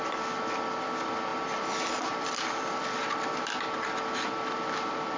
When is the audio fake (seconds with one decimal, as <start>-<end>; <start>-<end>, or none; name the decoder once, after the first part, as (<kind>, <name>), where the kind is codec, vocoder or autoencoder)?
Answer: none